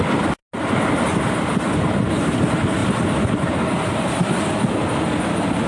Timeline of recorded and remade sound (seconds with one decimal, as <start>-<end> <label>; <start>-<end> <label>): 0.0-5.7 recorded